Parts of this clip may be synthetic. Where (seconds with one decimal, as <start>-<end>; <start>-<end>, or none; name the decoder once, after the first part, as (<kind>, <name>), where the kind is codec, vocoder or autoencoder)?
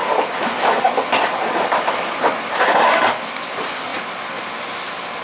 none